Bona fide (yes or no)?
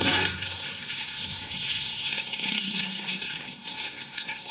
no